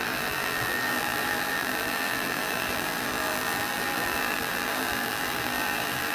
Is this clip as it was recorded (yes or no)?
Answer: no